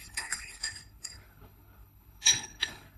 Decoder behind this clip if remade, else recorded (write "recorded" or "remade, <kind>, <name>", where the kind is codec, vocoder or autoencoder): remade, codec, HILCodec